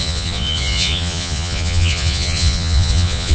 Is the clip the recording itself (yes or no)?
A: no